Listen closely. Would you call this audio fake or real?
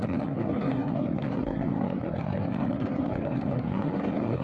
fake